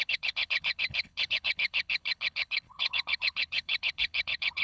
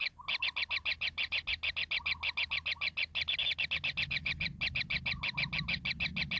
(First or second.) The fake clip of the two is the first